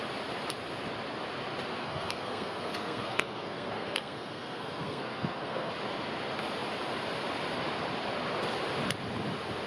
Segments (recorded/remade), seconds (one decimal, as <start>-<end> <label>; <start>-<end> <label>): 0.0-1.8 recorded; 1.8-5.7 remade; 5.7-9.7 recorded